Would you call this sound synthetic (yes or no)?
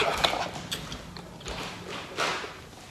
no